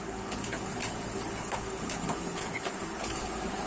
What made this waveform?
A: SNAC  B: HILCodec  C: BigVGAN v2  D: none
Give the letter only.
B